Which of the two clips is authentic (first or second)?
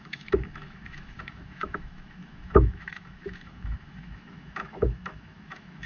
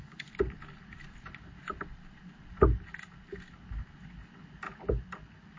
second